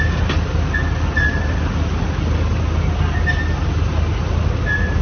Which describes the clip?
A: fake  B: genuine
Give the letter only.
B